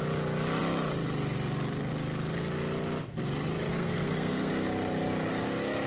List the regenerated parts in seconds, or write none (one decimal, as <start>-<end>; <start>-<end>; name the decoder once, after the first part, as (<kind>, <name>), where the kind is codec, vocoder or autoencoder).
3.7-4.5 (codec, SNAC)